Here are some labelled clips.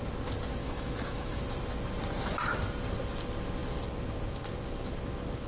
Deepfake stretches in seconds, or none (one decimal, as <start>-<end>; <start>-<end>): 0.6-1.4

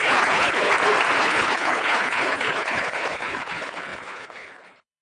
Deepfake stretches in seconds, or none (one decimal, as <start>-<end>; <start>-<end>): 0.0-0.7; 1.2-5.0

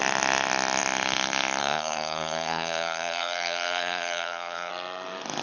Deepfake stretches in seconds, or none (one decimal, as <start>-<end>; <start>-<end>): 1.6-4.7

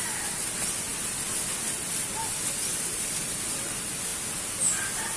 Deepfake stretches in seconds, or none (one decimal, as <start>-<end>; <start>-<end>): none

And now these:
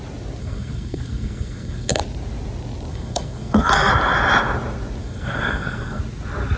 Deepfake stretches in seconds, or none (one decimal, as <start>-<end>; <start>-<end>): 0.4-2.0; 2.9-3.9; 5.0-6.0

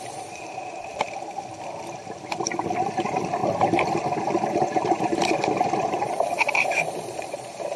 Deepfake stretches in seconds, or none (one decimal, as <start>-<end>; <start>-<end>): 0.0-0.8; 3.0-3.4; 4.5-7.8

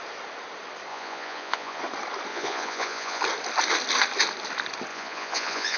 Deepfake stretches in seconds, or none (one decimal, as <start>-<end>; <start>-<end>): 0.9-1.8; 2.3-3.2; 4.9-5.8